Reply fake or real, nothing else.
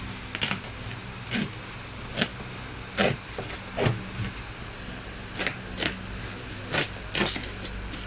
real